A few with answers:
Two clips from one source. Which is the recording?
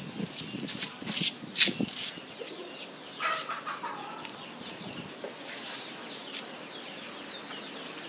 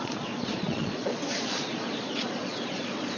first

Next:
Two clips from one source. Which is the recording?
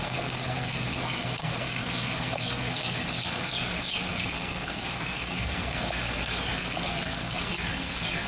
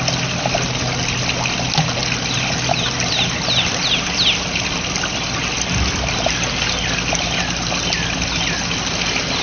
second